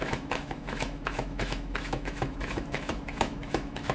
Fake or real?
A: fake